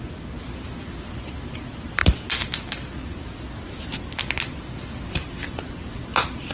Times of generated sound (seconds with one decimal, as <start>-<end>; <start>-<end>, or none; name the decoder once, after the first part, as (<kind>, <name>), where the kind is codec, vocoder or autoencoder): none